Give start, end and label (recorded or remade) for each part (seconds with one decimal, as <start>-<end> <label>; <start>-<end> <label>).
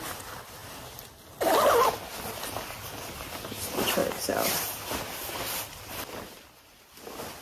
0.0-7.4 recorded